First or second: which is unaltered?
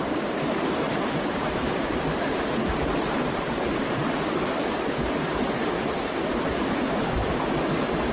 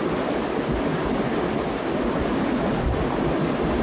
second